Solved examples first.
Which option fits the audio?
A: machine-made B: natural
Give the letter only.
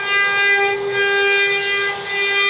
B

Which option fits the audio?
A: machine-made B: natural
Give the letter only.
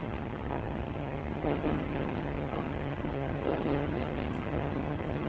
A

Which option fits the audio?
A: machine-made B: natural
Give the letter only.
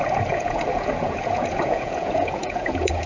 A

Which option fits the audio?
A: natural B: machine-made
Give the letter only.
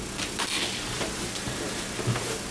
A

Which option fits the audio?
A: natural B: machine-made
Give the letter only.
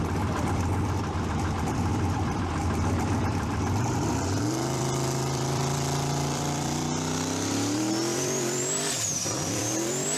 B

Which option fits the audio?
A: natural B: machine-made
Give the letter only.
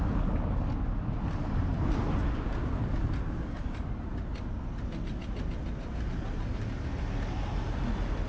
A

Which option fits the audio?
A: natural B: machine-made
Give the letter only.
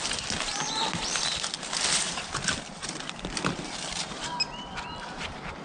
A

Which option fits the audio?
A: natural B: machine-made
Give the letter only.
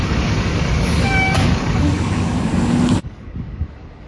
B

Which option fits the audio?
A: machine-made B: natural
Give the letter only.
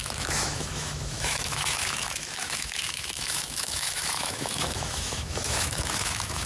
A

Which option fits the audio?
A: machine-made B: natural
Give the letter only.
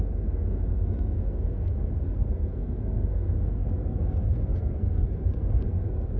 A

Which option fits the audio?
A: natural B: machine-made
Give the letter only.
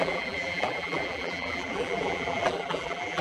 B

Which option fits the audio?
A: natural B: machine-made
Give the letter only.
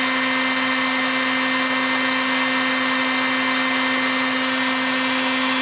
A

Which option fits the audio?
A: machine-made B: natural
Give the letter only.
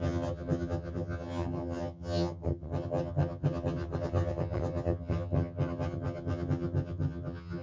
A